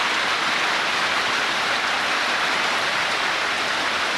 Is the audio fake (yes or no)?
no